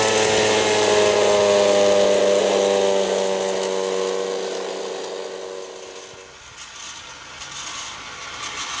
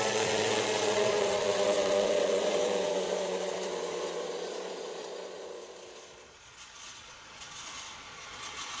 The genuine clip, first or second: first